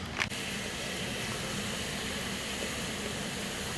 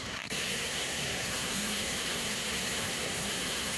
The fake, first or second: second